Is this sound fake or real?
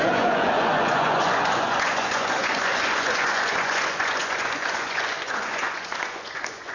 fake